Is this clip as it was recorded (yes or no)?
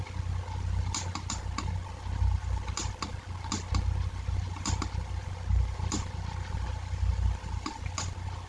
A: yes